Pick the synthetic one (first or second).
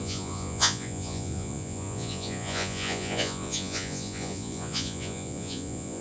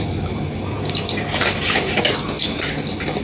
first